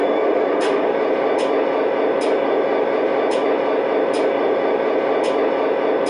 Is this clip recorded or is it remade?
recorded